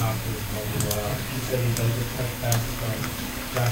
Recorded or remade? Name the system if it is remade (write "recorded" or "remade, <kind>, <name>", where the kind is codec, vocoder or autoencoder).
remade, codec, DAC